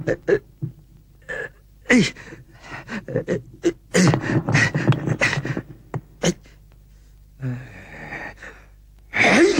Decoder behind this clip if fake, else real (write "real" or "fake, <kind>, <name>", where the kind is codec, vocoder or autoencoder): real